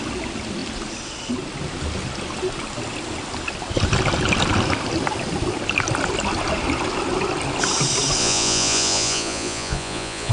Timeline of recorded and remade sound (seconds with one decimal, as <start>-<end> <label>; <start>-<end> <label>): 0.0-8.2 recorded; 8.2-10.3 remade